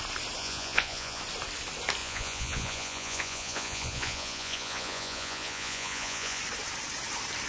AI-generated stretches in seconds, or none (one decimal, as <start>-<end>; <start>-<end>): 0.4-1.2; 2.0-6.4